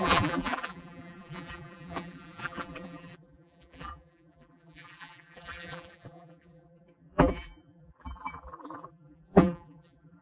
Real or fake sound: fake